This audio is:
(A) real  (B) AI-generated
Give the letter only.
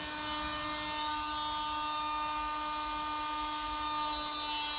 A